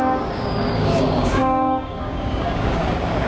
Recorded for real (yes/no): no